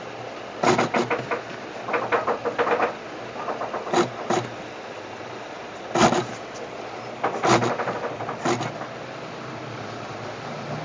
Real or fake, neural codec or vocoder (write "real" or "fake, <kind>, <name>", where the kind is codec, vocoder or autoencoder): real